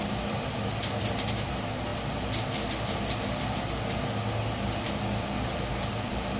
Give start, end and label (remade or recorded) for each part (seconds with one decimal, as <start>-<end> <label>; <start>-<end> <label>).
0.0-1.9 remade; 1.9-5.7 recorded; 5.7-6.4 remade